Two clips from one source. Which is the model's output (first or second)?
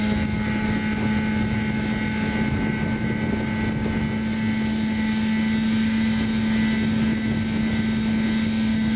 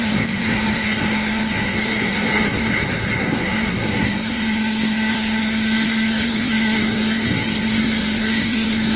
second